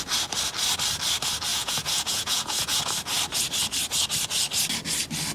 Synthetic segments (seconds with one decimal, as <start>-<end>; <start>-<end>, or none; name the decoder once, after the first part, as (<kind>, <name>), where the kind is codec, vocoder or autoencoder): 1.5-2.8 (vocoder, Vocos)